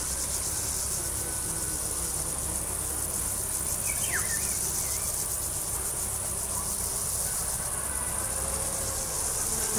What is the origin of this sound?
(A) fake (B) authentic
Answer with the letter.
B